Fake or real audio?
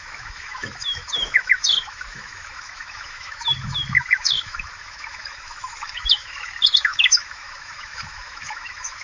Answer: fake